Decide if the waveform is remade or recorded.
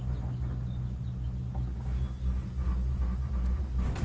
recorded